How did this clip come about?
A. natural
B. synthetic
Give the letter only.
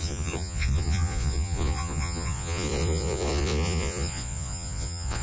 B